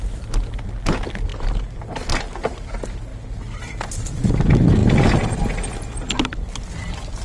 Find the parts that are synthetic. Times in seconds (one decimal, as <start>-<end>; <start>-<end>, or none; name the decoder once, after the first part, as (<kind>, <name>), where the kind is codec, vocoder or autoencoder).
none